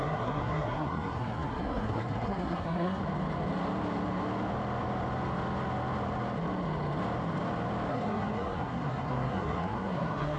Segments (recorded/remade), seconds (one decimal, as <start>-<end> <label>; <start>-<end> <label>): 0.0-3.0 remade; 3.0-7.9 recorded; 7.9-10.4 remade